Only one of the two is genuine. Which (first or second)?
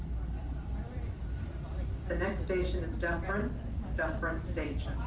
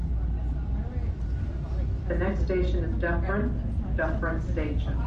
second